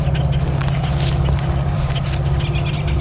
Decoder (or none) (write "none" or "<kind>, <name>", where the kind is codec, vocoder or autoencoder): none